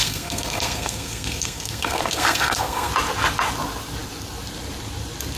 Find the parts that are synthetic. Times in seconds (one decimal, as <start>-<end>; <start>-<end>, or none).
0.0-2.9